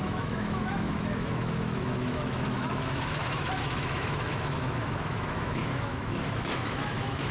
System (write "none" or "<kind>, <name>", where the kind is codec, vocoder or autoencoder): autoencoder, DAC-VAE